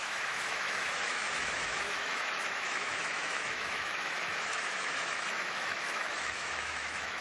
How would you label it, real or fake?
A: fake